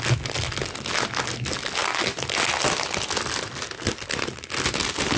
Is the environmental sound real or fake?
real